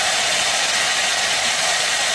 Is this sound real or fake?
fake